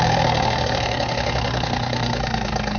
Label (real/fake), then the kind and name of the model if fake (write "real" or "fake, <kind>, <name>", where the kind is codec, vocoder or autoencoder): fake, codec, SNAC